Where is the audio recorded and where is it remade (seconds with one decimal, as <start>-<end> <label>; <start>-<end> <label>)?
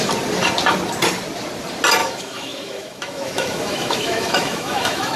0.0-2.0 recorded; 2.0-5.2 remade